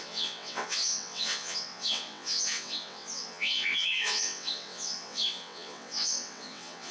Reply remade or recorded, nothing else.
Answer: remade